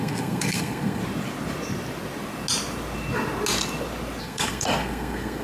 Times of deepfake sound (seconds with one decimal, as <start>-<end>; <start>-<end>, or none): 0.0-1.0; 4.2-5.4